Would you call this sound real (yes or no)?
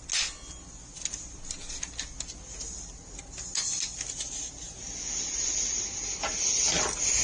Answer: yes